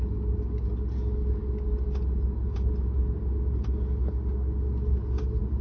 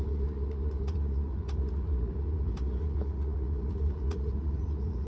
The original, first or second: first